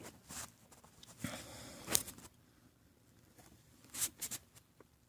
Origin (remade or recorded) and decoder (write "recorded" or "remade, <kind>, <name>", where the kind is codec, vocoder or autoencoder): remade, vocoder, BigVGAN v2